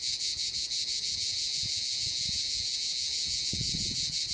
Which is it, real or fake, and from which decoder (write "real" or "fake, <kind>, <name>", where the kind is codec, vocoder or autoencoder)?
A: fake, vocoder, Vocos